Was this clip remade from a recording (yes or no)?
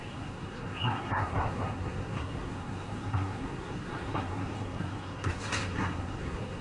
yes